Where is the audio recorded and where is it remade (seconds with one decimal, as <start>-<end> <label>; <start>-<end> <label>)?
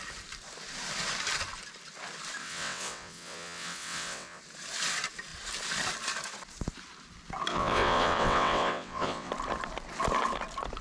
0.0-2.4 recorded; 2.4-4.4 remade; 4.4-7.5 recorded; 7.5-9.3 remade; 9.3-10.8 recorded